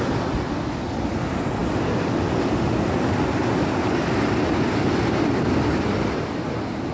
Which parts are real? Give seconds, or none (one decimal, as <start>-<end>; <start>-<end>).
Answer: 0.0-6.9